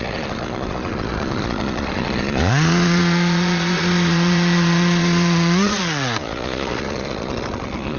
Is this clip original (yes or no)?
no